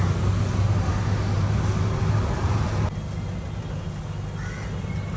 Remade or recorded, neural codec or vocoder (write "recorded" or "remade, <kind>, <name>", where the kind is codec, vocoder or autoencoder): recorded